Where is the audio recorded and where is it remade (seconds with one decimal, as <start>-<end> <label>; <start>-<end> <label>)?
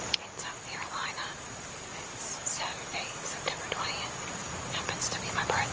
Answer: 0.0-1.0 recorded; 1.0-2.4 remade; 2.4-2.9 recorded; 2.9-3.7 remade; 3.7-5.7 recorded